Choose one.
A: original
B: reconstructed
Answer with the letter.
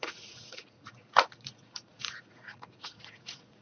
B